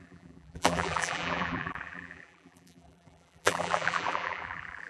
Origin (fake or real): fake